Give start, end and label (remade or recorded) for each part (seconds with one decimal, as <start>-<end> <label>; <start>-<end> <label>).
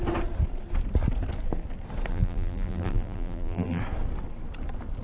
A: 0.0-2.1 recorded; 2.1-3.8 remade; 3.8-5.0 recorded